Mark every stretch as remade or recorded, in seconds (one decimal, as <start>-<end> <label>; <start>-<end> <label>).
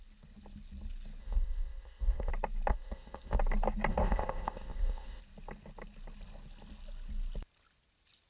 0.0-1.2 recorded; 1.2-2.3 remade; 2.3-2.7 recorded; 2.7-3.4 remade; 3.4-3.9 recorded; 3.9-5.2 remade; 5.2-8.3 recorded